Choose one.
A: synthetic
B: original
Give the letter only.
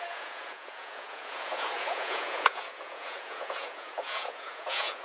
A